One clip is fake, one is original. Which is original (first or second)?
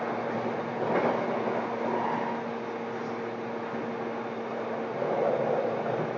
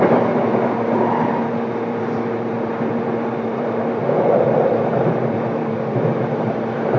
first